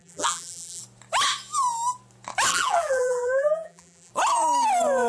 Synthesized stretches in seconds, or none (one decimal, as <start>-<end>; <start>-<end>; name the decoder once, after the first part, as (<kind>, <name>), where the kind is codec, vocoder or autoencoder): 0.0-0.8 (vocoder, BigVGAN v2); 2.5-4.1